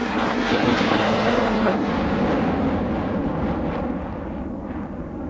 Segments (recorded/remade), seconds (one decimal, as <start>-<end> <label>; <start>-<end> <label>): 0.0-1.9 remade; 1.9-5.3 recorded